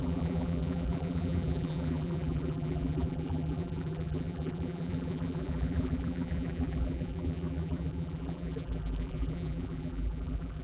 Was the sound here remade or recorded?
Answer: remade